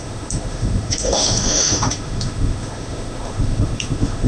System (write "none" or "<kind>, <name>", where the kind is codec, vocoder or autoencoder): autoencoder, DAC-VAE